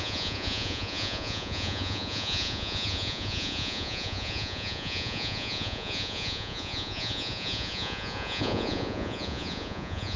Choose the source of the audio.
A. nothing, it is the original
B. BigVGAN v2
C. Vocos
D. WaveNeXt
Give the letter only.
C